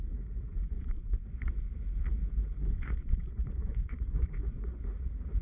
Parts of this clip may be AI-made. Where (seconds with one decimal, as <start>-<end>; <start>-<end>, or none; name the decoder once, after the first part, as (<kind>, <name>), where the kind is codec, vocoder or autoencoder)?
0.5-1.7 (vocoder, Vocos); 2.2-4.8